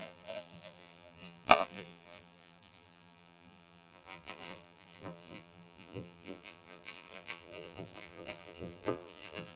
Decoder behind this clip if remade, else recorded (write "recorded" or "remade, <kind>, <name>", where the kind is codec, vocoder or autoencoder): remade, vocoder, BigVGAN v2